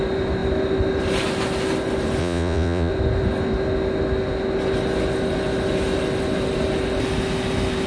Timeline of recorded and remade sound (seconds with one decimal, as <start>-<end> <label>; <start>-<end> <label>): 0.0-2.2 recorded; 2.2-2.9 remade; 2.9-7.9 recorded

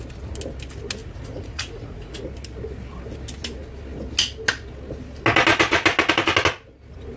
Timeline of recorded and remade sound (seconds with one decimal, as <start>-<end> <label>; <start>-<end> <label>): 0.0-1.0 recorded; 1.0-2.2 remade; 2.2-7.2 recorded

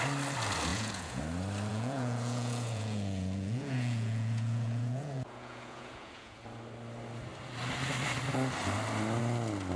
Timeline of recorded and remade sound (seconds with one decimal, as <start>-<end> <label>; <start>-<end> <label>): 0.0-0.7 recorded; 0.7-1.2 remade; 1.2-1.7 recorded; 1.7-6.4 remade; 6.4-9.8 recorded

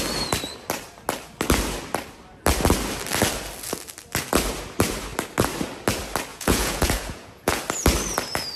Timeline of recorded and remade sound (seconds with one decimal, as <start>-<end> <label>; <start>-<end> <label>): 0.0-6.3 recorded; 6.3-7.6 remade; 7.6-8.6 recorded

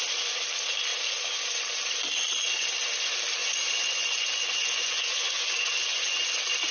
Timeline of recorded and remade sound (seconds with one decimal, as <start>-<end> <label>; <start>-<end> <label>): 0.0-3.4 recorded; 3.4-6.3 remade; 6.3-6.7 recorded

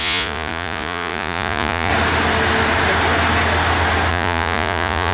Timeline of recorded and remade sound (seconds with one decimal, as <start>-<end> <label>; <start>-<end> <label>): 0.0-1.9 remade; 1.9-4.1 recorded; 4.1-5.1 remade

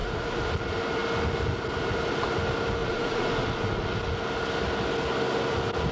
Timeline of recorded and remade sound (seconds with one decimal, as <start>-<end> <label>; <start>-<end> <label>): 0.0-0.5 remade; 0.5-2.8 recorded; 2.8-4.0 remade; 4.0-5.9 recorded